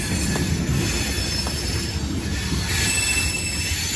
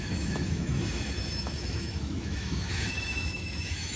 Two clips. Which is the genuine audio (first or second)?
first